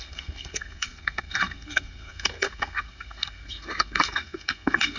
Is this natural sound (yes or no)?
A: no